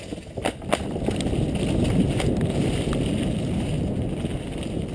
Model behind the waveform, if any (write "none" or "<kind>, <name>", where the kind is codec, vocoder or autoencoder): none